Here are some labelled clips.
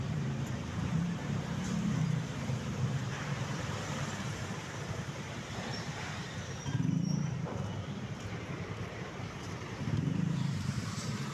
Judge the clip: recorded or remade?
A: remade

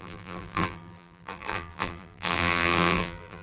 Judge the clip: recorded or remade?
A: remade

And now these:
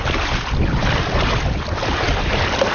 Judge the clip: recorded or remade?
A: recorded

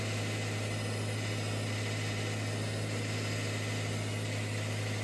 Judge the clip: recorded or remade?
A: recorded